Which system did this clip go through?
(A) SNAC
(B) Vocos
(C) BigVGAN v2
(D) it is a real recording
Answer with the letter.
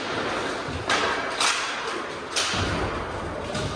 D